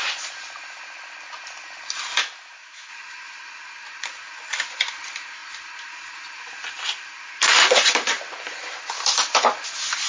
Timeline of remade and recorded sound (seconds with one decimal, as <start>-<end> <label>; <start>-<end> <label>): 0.0-2.2 recorded; 2.2-2.9 remade; 2.9-10.1 recorded